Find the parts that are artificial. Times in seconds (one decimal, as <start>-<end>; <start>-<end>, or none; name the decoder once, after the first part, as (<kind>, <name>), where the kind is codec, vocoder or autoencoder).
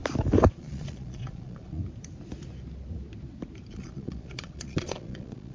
0.5-1.8 (vocoder, Vocos); 3.7-5.5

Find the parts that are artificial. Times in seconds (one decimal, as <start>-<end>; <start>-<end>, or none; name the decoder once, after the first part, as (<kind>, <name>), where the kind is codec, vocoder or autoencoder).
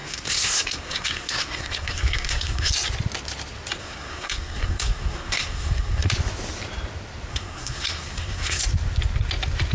0.0-2.7 (codec, SNAC); 3.8-6.1; 7.3-8.6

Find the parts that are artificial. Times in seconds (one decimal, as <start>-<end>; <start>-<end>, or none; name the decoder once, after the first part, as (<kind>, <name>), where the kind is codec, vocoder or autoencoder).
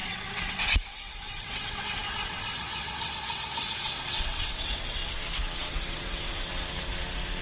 0.0-5.0 (vocoder, WaveNeXt); 5.7-6.5